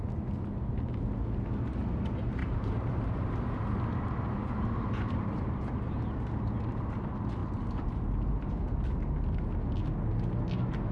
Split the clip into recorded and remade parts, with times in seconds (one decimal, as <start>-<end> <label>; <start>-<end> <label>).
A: 0.0-2.4 recorded; 2.4-5.7 remade; 5.7-7.4 recorded; 7.4-8.5 remade; 8.5-10.9 recorded